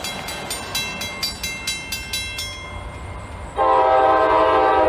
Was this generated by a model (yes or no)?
no